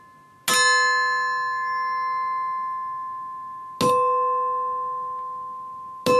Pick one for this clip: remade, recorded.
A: recorded